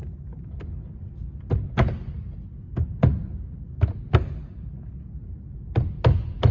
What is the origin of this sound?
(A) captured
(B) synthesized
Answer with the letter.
A